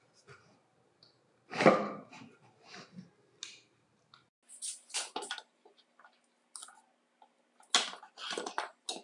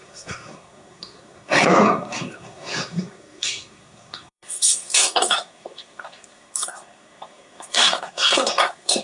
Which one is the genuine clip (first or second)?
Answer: first